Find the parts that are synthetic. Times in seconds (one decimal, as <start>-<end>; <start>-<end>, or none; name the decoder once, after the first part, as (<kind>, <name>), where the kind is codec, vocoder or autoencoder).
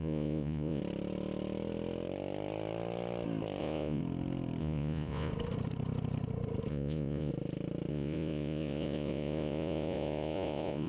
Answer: 0.0-0.8 (vocoder, Vocos); 3.6-4.0; 4.6-5.3; 6.7-7.3; 7.9-10.9